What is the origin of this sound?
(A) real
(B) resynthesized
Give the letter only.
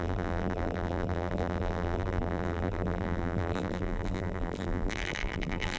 B